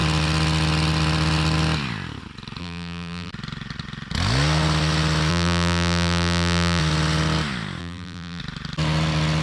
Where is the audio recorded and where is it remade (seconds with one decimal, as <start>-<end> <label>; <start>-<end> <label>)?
0.0-2.6 recorded; 2.6-3.3 remade; 3.3-5.3 recorded; 5.3-6.8 remade; 6.8-7.8 recorded; 7.8-8.4 remade; 8.4-9.4 recorded